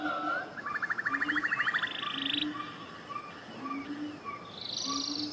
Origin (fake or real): real